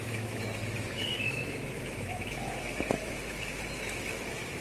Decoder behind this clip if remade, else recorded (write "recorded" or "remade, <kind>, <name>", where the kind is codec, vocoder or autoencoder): remade, autoencoder, DAC-VAE